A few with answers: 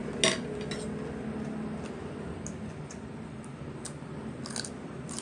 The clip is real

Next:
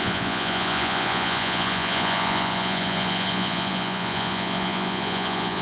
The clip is fake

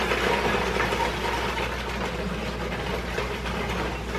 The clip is real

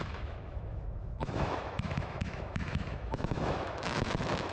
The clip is fake